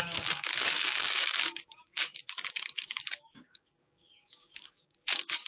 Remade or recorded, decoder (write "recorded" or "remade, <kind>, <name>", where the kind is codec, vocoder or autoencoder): remade, codec, DAC